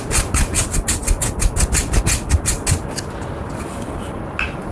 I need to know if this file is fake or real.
real